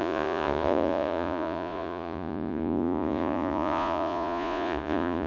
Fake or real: fake